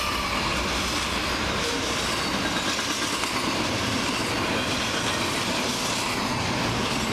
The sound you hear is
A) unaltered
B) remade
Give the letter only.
A